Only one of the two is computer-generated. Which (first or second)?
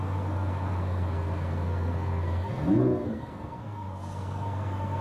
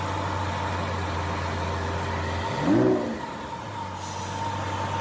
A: first